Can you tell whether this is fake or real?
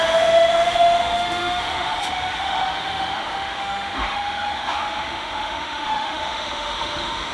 fake